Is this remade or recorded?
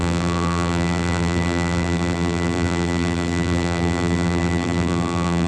remade